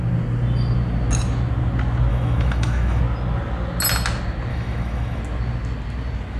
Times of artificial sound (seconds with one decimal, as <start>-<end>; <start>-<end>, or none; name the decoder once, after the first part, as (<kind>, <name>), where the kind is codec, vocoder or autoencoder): 2.1-3.0 (autoencoder, DAC-VAE); 4.5-5.2